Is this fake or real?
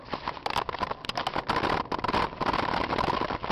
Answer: real